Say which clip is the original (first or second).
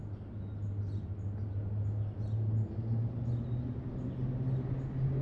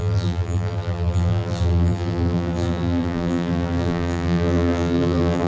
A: first